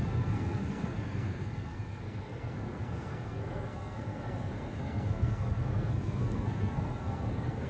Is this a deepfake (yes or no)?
yes